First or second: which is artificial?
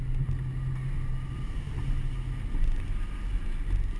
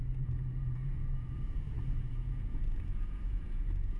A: second